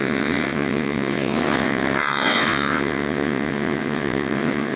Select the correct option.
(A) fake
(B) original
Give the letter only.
A